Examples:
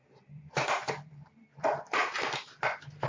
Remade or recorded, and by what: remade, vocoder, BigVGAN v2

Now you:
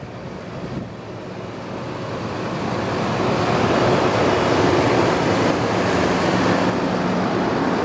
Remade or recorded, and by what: recorded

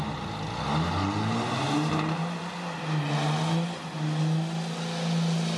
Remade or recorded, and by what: recorded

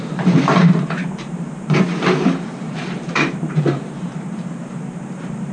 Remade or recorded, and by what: remade, vocoder, BigVGAN v2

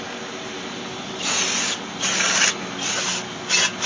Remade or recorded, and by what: recorded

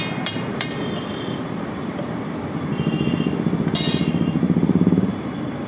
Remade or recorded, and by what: remade, vocoder, BigVGAN v2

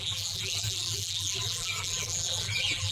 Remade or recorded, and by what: remade, vocoder, BigVGAN v2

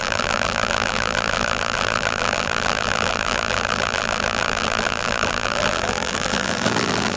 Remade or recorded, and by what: remade, vocoder, BigVGAN v2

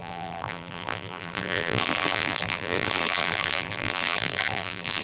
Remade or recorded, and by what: remade, vocoder, BigVGAN v2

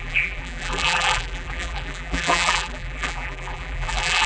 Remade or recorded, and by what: remade, vocoder, BigVGAN v2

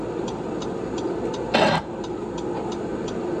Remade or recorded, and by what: recorded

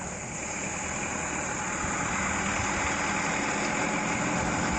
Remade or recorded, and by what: recorded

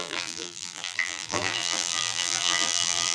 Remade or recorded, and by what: remade, vocoder, BigVGAN v2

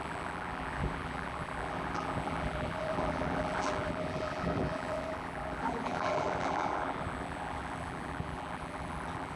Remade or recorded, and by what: remade, vocoder, BigVGAN v2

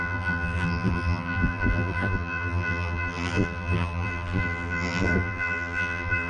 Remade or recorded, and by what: remade, vocoder, BigVGAN v2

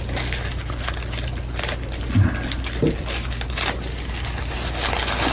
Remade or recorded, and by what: recorded